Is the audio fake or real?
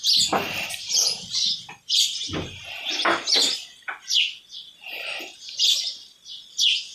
real